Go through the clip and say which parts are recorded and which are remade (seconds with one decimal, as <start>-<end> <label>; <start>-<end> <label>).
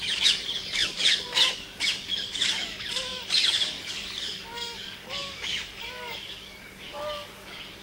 0.0-7.8 remade